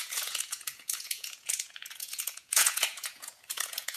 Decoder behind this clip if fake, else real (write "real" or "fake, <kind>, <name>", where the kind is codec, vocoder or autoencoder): fake, vocoder, Vocos